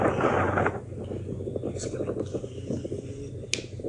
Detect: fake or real real